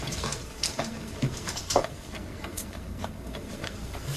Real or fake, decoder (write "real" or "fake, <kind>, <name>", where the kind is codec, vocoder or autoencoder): fake, codec, SNAC